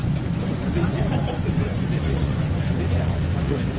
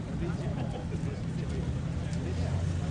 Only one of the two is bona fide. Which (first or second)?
second